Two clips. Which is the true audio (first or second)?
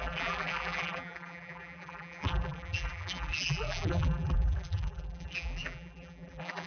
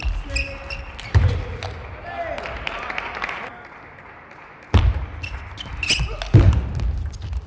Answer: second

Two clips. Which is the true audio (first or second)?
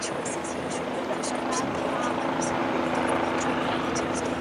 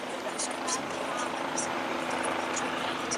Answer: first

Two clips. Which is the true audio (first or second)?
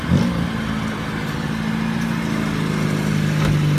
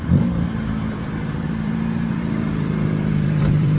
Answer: first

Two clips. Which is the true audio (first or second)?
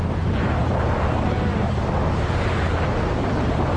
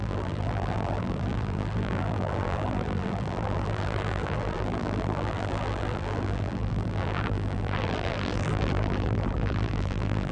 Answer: first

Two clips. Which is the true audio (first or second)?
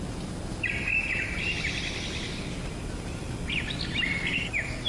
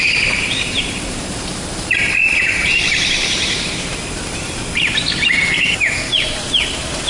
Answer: first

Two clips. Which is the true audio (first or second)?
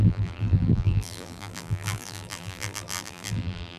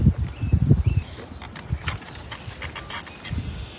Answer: second